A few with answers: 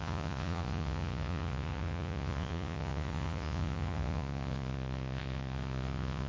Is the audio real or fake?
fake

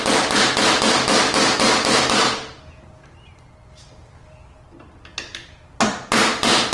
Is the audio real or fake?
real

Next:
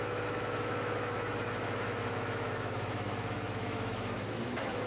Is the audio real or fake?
fake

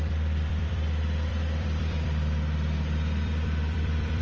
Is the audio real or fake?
fake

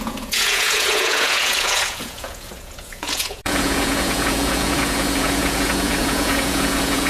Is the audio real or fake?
fake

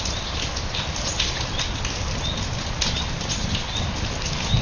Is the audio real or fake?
real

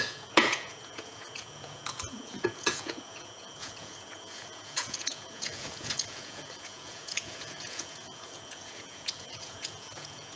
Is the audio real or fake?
fake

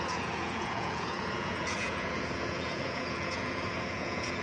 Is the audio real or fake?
fake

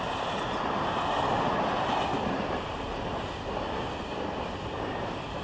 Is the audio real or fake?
real